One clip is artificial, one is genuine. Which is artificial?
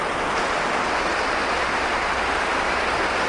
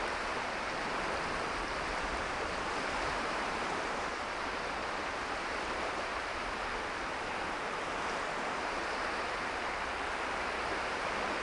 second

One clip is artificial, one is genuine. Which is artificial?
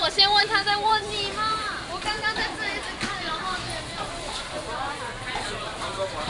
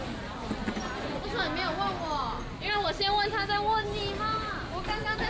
first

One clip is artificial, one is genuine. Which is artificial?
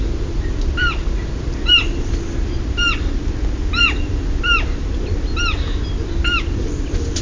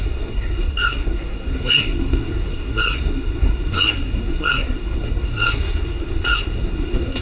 second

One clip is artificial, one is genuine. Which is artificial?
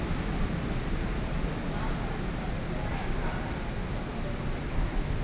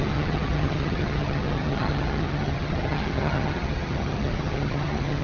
second